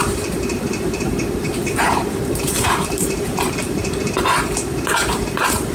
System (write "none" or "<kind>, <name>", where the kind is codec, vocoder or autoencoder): vocoder, BigVGAN v2